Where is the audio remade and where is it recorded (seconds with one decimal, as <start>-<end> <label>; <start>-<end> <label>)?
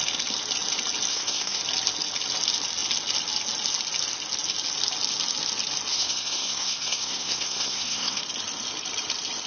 0.0-1.1 recorded; 1.1-1.6 remade; 1.6-5.9 recorded; 5.9-8.2 remade; 8.2-9.5 recorded